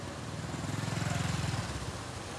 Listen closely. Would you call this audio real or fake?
real